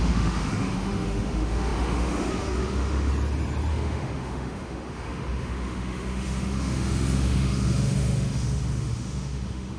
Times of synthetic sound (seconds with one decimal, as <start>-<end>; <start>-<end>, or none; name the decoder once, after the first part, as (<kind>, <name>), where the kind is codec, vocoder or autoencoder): 0.0-3.1 (autoencoder, DAC-VAE); 3.7-9.8

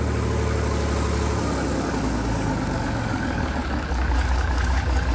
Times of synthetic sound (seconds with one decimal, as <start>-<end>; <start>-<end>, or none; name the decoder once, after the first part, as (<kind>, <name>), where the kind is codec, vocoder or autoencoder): 1.7-5.1 (codec, DAC)

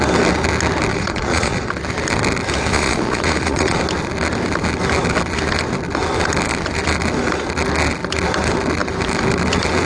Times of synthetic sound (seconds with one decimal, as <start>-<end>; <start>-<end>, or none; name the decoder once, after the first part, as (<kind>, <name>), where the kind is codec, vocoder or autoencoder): 0.9-1.7 (vocoder, Vocos); 2.7-3.8

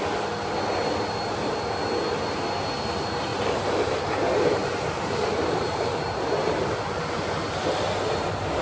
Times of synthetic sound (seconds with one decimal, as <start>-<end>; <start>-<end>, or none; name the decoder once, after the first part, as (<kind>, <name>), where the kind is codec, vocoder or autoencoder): 3.3-4.0 (vocoder, BigVGAN v2); 4.6-7.0

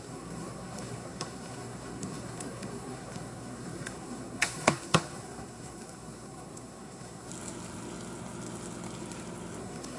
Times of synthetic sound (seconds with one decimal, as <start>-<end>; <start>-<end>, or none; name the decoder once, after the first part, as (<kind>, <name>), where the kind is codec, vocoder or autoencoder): 0.0-7.3 (codec, SNAC); 9.6-10.0

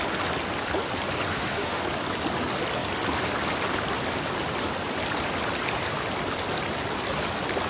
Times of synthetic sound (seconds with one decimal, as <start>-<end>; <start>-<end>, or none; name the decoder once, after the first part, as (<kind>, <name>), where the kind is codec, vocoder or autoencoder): 1.3-1.8 (autoencoder, DAC-VAE)

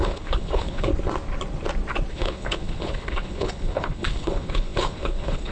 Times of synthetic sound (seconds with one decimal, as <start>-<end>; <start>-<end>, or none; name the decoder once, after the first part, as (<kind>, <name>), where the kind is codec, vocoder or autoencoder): 0.0-0.9 (codec, HILCodec); 2.1-5.5